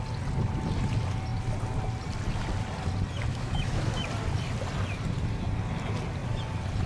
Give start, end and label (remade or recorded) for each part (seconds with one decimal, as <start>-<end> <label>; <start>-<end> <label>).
0.0-3.3 recorded; 3.3-4.0 remade; 4.0-6.9 recorded